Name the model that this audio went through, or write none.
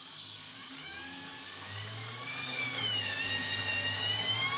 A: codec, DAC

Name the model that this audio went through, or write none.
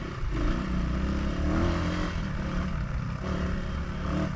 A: none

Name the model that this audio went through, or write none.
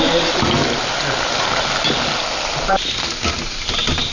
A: none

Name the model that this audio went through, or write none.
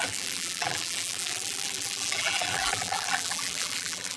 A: vocoder, BigVGAN v2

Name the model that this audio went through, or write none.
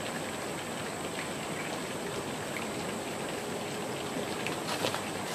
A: none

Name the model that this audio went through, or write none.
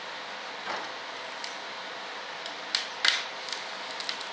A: none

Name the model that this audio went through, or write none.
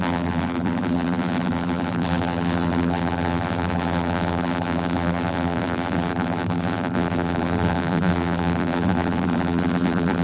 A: vocoder, BigVGAN v2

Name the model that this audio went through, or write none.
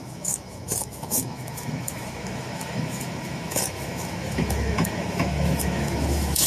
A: autoencoder, DAC-VAE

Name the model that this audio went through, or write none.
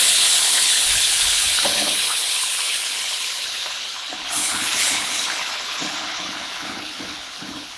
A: codec, HILCodec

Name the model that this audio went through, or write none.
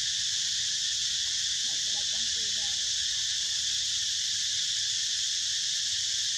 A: vocoder, BigVGAN v2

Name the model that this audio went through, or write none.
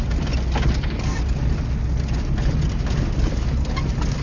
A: none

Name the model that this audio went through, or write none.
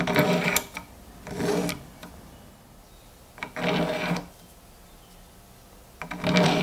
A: none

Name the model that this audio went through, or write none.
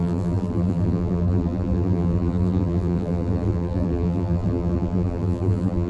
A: vocoder, BigVGAN v2